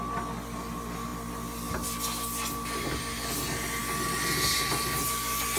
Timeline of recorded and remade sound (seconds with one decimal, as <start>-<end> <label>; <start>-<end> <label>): 0.0-5.6 recorded